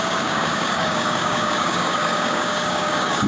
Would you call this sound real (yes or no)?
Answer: no